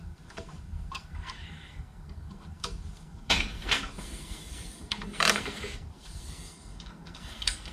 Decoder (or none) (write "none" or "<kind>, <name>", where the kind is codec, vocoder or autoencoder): codec, SNAC